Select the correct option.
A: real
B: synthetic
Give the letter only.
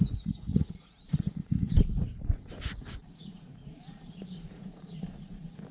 B